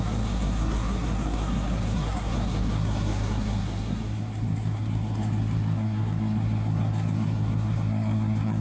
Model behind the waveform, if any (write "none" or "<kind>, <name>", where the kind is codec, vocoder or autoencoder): codec, SNAC